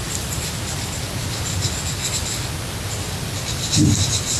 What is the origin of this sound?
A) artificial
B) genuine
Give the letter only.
B